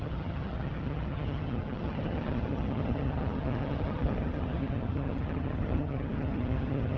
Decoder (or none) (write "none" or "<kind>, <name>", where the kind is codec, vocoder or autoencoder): vocoder, HiFi-GAN